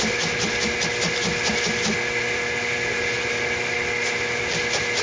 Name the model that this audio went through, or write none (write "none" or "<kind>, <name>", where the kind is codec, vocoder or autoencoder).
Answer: none